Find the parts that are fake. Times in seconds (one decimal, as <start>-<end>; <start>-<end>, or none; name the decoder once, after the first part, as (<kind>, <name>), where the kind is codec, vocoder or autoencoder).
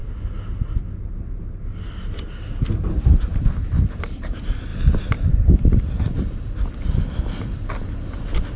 none